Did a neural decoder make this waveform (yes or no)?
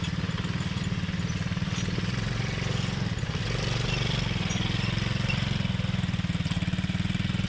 no